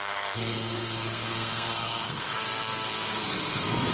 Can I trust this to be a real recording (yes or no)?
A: no